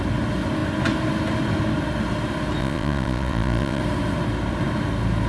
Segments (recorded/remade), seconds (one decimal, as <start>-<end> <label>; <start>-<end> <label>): 0.0-2.6 recorded; 2.6-3.8 remade; 3.8-5.3 recorded